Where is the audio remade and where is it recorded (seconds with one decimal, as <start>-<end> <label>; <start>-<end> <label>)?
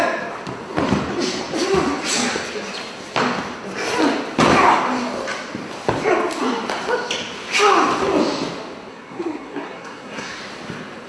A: 0.0-8.9 recorded; 8.9-10.4 remade; 10.4-11.1 recorded